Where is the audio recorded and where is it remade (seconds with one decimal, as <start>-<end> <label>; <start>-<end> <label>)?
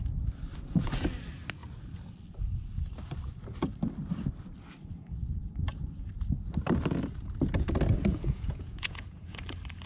0.0-8.1 recorded; 8.1-9.4 remade; 9.4-9.9 recorded